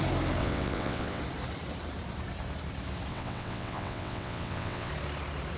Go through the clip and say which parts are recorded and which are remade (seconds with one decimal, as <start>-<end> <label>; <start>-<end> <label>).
0.0-0.4 recorded; 0.4-1.2 remade; 1.2-3.1 recorded; 3.1-4.9 remade; 4.9-5.6 recorded